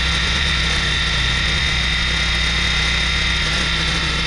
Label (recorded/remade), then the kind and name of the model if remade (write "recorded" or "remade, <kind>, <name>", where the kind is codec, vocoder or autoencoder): remade, vocoder, Vocos